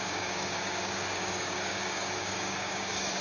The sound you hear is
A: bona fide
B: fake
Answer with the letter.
B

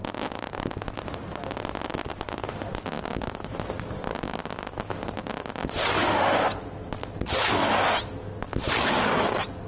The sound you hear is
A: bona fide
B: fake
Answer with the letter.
A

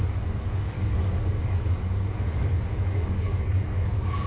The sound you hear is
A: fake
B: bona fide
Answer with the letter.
A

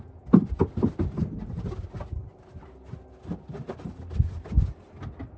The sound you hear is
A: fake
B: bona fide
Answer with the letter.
B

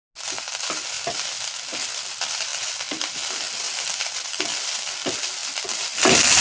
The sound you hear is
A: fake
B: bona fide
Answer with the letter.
B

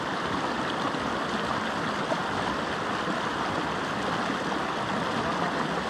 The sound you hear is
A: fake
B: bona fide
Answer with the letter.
B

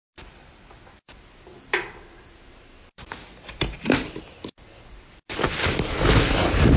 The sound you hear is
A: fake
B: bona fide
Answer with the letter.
B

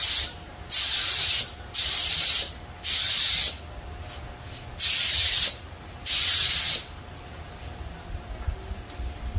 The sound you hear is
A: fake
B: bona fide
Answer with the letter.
B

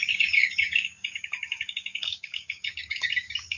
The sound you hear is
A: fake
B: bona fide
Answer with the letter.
A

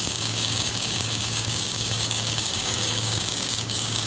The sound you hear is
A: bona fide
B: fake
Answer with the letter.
B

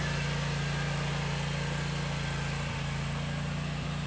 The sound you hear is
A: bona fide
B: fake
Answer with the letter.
A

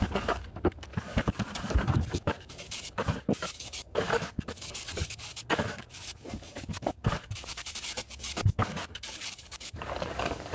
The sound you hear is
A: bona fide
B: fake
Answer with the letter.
B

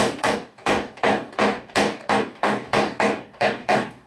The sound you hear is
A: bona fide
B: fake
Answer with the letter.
B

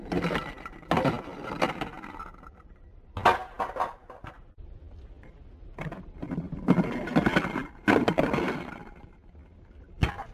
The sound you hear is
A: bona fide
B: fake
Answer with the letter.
A